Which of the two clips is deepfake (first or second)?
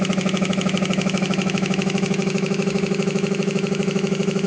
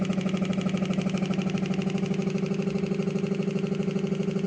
first